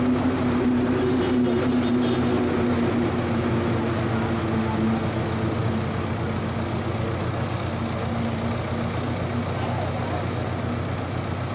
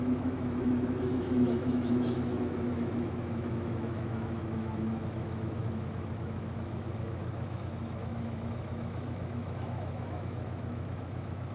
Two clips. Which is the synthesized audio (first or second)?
second